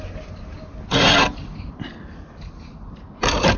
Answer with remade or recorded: recorded